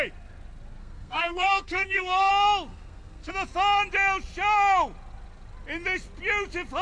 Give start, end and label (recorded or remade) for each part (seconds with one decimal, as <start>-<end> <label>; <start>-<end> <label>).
0.0-0.8 recorded; 0.8-2.3 remade; 2.3-2.7 recorded; 2.7-3.3 remade; 3.3-6.8 recorded